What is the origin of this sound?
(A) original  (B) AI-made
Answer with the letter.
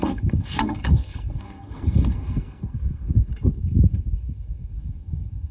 B